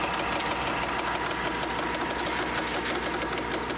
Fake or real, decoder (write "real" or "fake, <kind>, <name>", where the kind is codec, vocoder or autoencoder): real